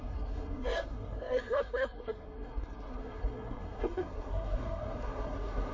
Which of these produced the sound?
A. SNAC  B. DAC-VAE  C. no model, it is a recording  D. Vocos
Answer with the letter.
A